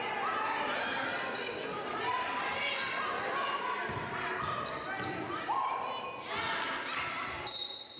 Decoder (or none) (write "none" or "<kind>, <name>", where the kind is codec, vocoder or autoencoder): none